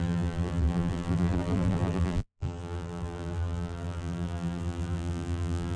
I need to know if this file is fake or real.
fake